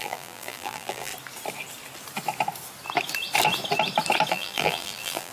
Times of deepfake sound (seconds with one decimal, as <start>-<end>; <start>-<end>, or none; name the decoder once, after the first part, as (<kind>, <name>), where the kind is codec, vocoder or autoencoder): 0.0-1.1 (vocoder, BigVGAN v2); 4.3-5.3

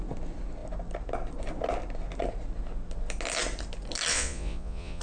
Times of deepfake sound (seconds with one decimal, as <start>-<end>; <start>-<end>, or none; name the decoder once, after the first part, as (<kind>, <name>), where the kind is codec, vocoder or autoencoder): 4.1-5.0 (vocoder, Vocos)

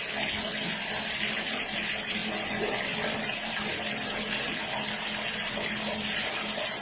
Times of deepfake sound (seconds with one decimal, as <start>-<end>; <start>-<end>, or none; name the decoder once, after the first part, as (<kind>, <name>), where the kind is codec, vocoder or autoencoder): none

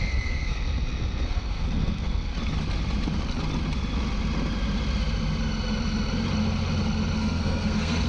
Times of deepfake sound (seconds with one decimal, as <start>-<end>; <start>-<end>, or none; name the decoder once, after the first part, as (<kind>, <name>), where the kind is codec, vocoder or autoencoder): 0.0-2.3 (codec, SNAC); 7.2-8.1